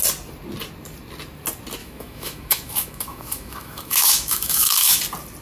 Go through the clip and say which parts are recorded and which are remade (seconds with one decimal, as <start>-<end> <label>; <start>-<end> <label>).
0.0-1.8 recorded; 1.8-5.0 remade; 5.0-5.4 recorded

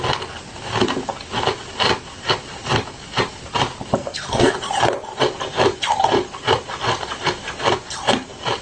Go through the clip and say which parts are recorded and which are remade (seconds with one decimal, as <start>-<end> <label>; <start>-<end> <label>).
0.0-4.0 recorded; 4.0-4.5 remade; 4.5-8.6 recorded

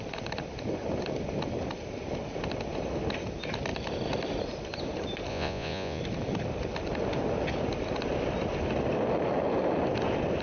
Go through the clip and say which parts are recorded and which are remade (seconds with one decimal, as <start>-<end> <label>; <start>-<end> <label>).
0.0-5.3 recorded; 5.3-6.0 remade; 6.0-10.4 recorded

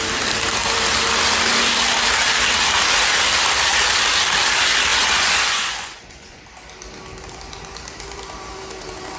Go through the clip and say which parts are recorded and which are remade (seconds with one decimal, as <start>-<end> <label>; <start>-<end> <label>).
0.0-4.9 recorded; 4.9-6.4 remade; 6.4-9.2 recorded

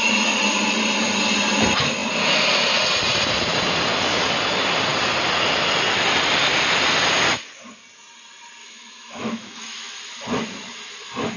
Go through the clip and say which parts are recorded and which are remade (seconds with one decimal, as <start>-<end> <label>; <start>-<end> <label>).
0.0-8.6 recorded; 8.6-9.9 remade; 9.9-11.4 recorded

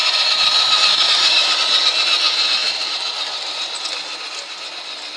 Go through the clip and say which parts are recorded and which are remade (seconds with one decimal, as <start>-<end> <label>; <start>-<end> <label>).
0.0-1.6 remade; 1.6-2.6 recorded; 2.6-3.8 remade; 3.8-5.2 recorded

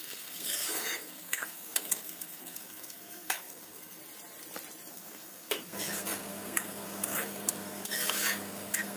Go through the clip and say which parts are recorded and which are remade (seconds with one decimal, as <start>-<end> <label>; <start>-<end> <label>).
0.0-4.0 remade; 4.0-4.9 recorded; 4.9-9.0 remade